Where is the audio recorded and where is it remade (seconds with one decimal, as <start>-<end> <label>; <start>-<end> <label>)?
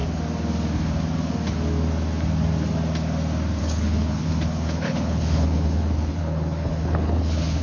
0.0-3.6 recorded; 3.6-7.6 remade